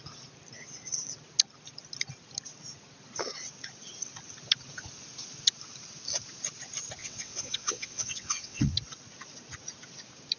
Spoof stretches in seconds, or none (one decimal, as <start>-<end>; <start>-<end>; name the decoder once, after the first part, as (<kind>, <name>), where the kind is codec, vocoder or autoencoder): 7.0-8.7 (vocoder, WaveNeXt)